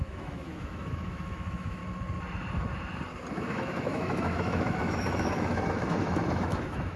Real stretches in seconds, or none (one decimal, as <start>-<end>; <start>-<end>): 1.8-3.3